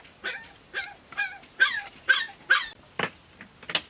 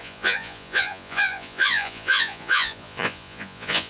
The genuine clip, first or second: first